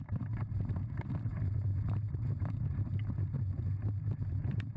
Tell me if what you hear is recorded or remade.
remade